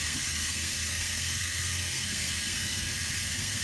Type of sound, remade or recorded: remade